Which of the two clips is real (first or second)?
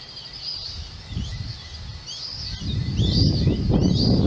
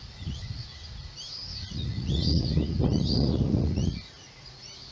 first